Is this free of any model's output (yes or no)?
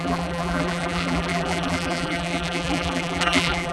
no